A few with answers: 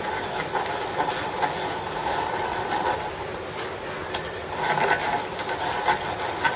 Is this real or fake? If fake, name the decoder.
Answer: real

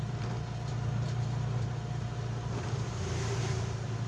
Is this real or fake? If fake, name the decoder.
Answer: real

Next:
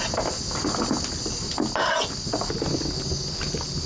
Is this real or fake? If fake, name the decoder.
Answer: real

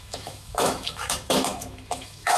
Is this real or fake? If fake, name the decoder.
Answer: fake, autoencoder, DAC-VAE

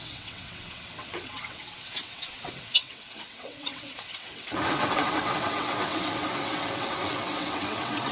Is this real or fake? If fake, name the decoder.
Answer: fake, vocoder, WaveNeXt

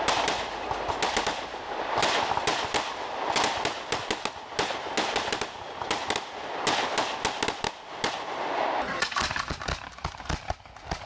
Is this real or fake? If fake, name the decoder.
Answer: real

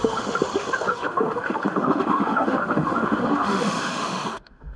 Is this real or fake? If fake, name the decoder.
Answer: fake, autoencoder, DAC-VAE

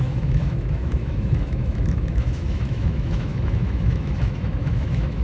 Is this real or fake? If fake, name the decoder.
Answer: fake, autoencoder, DAC-VAE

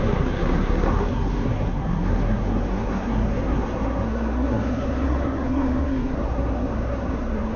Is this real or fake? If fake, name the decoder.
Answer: fake, codec, SNAC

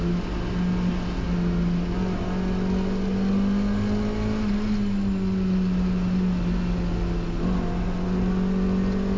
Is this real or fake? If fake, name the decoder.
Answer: real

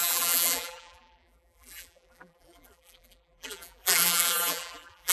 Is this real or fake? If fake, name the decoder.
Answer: fake, vocoder, BigVGAN v2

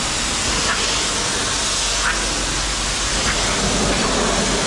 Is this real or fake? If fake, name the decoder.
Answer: real